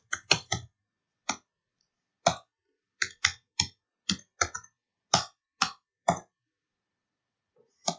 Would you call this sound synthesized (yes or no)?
no